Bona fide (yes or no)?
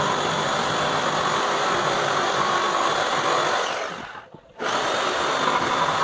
yes